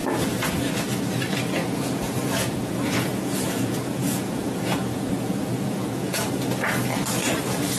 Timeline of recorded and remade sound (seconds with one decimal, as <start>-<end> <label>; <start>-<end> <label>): 0.0-0.5 remade; 0.5-1.6 recorded; 1.6-6.3 remade; 6.3-7.8 recorded

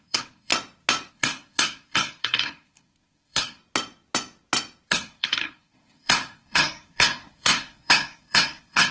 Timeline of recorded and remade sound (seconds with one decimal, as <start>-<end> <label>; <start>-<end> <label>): 0.0-0.5 remade; 0.5-1.1 recorded; 1.1-3.6 remade; 3.6-4.9 recorded; 4.9-8.9 remade